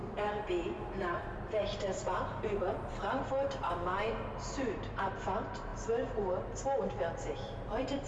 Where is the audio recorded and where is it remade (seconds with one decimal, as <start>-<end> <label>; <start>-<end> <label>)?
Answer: 0.0-8.1 remade

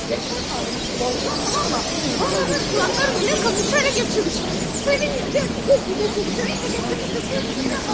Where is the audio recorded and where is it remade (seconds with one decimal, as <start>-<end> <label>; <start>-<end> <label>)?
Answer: 0.0-7.9 recorded

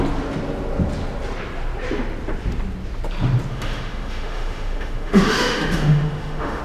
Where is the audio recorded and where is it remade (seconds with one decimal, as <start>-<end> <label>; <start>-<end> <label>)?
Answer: 0.0-3.5 recorded; 3.5-6.6 remade